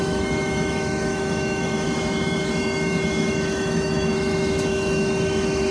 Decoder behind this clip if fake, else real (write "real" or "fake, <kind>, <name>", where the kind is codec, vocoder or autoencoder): fake, autoencoder, DAC-VAE